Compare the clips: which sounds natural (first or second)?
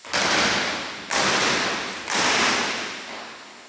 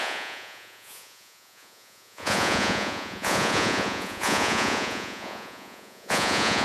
first